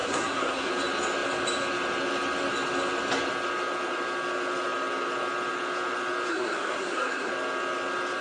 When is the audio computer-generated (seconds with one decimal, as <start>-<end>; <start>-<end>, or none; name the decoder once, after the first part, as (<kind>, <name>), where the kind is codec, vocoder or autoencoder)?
0.0-0.7 (codec, SNAC); 6.3-7.3